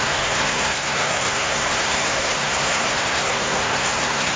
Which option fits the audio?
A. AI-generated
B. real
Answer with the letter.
A